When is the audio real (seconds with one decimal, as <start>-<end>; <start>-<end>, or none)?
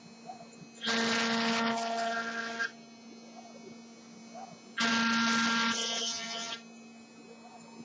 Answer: 0.0-6.0; 6.5-7.8